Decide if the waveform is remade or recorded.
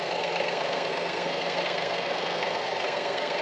remade